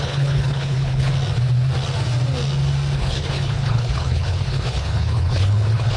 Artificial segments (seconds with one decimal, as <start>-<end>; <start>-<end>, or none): 0.0-1.1; 3.0-6.0